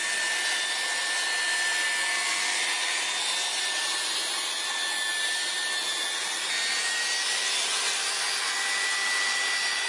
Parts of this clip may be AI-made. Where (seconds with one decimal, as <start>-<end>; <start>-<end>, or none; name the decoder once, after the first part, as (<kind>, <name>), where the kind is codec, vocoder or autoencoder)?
none